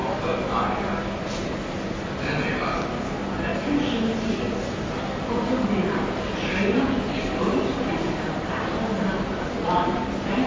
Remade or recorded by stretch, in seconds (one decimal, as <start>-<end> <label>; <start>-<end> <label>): 0.0-10.5 recorded